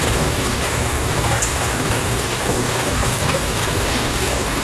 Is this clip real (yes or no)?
no